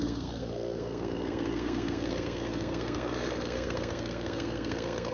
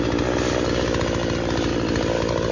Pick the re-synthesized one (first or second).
first